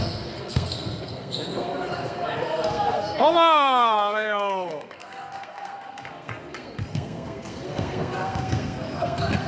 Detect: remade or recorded remade